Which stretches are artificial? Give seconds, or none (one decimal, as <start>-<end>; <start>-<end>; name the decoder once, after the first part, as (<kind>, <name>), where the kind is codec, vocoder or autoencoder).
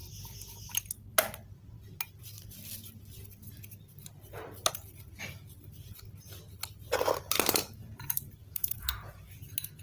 8.4-9.4 (vocoder, Vocos)